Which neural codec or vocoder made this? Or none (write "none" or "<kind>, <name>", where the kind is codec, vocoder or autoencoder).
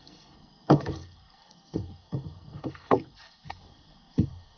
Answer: codec, SNAC